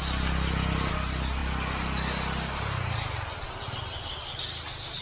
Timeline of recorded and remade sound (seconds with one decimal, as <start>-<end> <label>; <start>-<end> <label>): 0.0-5.0 recorded